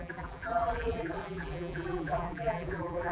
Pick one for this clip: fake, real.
fake